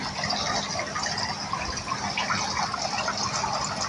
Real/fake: real